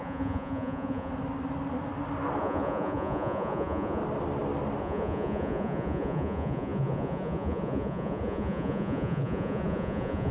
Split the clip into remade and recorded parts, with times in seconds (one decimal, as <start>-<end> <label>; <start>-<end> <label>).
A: 0.0-1.1 remade; 1.1-2.4 recorded; 2.4-4.0 remade; 4.0-4.8 recorded; 4.8-10.3 remade